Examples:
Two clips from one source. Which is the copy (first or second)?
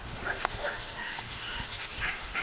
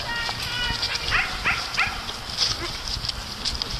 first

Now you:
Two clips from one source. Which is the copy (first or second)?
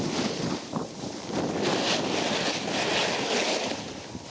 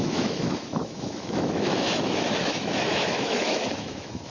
second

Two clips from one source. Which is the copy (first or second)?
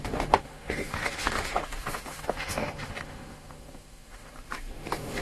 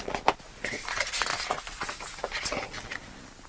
first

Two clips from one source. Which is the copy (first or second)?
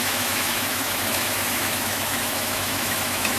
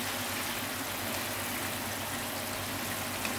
first